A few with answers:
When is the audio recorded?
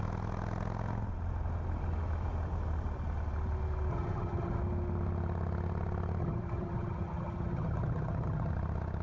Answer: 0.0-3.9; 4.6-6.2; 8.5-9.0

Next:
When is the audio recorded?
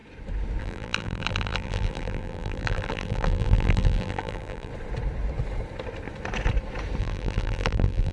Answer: 0.0-0.6; 4.7-7.0